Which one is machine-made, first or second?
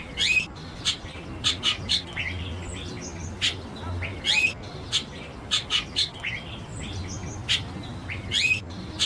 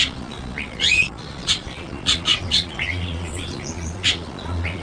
second